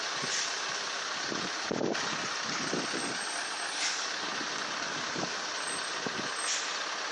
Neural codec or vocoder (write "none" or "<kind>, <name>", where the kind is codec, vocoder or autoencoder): vocoder, BigVGAN v2